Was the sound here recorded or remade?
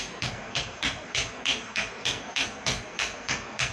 remade